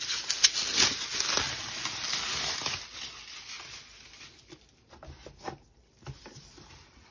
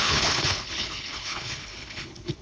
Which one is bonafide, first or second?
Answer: first